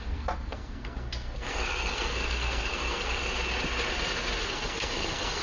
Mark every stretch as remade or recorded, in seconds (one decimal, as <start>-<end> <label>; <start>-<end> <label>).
0.0-3.2 remade; 3.2-4.5 recorded; 4.5-5.4 remade